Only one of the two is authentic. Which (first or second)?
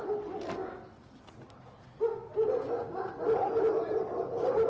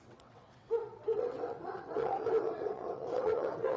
first